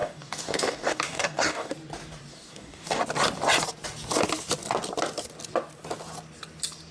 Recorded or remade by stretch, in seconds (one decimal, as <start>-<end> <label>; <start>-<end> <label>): 0.0-1.7 remade; 1.7-2.3 recorded; 2.3-3.0 remade; 3.0-6.9 recorded